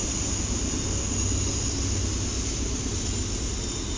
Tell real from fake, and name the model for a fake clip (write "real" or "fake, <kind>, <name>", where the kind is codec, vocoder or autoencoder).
real